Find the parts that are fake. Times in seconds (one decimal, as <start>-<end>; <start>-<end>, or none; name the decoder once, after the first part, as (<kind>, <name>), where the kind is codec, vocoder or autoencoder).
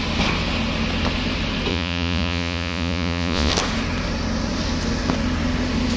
1.7-3.5 (vocoder, Vocos)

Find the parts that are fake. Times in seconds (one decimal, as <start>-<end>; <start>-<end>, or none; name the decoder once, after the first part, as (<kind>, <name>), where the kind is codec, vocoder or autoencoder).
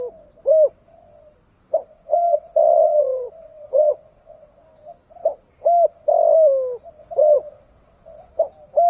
1.9-4.6 (vocoder, WaveNeXt); 7.0-8.3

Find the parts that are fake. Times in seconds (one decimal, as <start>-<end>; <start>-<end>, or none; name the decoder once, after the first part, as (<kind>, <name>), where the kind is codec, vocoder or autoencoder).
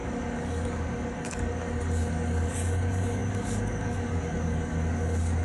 0.0-5.4 (codec, DAC)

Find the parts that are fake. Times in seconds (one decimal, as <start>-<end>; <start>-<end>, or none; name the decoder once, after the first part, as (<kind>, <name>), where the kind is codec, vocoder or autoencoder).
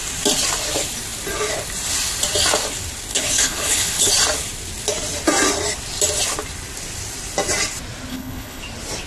3.1-4.1 (codec, HILCodec); 8.1-8.6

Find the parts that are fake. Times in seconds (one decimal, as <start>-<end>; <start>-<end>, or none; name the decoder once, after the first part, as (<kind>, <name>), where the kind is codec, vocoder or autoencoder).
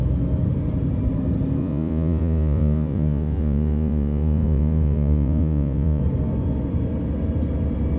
1.6-6.0 (vocoder, Vocos)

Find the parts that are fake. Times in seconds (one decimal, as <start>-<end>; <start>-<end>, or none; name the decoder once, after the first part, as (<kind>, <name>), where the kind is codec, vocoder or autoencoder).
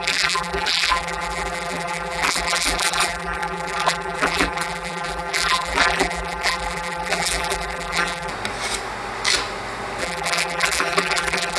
0.0-8.3 (vocoder, BigVGAN v2); 10.0-11.6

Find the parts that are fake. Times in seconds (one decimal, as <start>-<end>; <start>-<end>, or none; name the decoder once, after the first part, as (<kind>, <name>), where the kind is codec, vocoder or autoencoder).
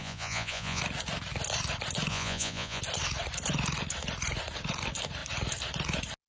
0.0-0.8 (vocoder, Vocos); 2.1-2.8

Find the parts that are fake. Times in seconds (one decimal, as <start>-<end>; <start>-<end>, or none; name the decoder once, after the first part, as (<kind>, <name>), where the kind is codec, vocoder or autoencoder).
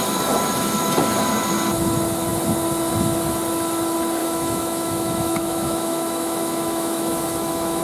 4.2-7.8 (autoencoder, DAC-VAE)